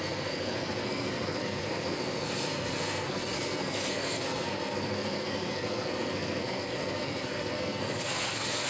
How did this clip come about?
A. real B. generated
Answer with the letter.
B